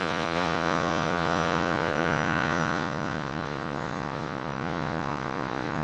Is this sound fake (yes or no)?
yes